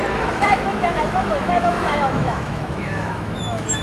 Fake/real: fake